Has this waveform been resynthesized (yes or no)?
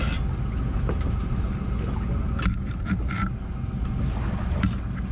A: no